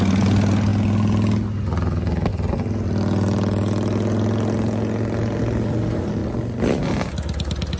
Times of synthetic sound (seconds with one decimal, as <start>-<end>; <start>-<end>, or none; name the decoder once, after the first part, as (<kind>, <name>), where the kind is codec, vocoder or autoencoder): none